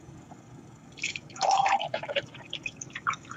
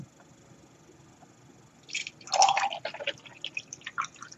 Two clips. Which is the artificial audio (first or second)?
first